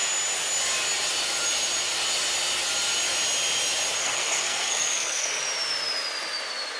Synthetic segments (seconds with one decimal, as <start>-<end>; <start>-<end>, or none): 4.0-5.4

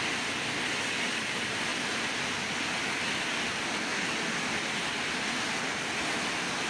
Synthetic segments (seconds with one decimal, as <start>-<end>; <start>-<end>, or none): none